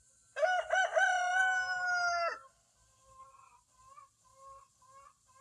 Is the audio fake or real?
real